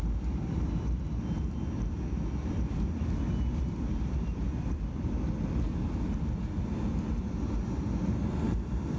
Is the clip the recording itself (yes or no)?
no